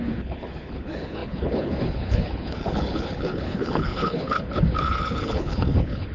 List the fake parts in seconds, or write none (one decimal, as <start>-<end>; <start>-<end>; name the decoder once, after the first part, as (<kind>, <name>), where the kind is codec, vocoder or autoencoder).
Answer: 0.0-6.1 (codec, HILCodec)